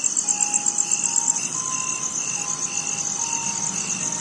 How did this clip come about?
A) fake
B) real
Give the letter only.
B